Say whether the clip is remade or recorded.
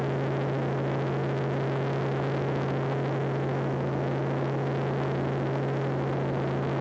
recorded